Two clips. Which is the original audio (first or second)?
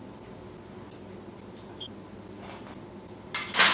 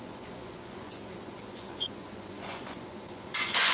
first